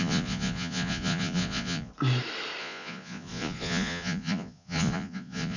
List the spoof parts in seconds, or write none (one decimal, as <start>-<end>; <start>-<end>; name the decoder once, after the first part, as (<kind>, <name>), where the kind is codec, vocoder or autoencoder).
0.0-1.9 (vocoder, Vocos); 2.6-5.6